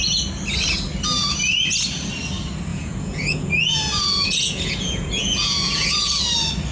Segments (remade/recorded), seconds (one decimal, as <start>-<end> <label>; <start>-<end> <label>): 0.0-2.7 recorded; 2.7-6.1 remade; 6.1-6.7 recorded